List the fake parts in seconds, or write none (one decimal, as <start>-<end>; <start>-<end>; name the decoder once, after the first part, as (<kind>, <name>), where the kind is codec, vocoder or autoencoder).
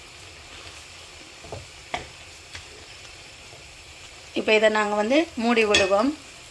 1.8-5.7 (vocoder, BigVGAN v2)